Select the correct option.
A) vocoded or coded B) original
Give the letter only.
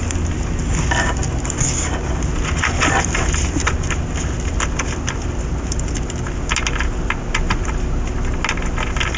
B